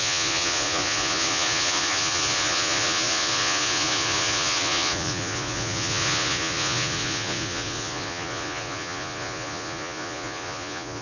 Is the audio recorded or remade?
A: remade